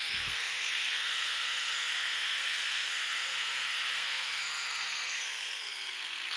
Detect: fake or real fake